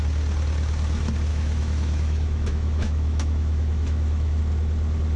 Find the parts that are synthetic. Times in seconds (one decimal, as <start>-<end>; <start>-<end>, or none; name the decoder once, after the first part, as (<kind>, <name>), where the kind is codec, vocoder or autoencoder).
1.3-4.4 (autoencoder, DAC-VAE)